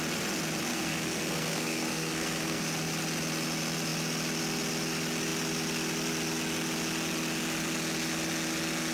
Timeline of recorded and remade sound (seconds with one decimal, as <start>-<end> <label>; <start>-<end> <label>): 0.0-0.7 recorded; 0.7-2.6 remade; 2.6-8.9 recorded